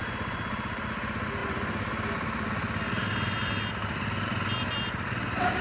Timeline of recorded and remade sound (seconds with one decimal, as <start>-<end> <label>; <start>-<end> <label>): 0.0-5.6 recorded